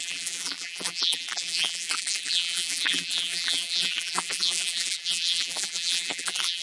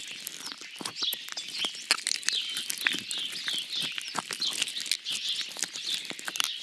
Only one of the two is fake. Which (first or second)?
first